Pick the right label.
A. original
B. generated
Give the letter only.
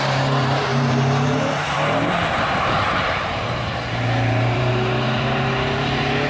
B